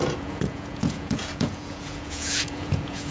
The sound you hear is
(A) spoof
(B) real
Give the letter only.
A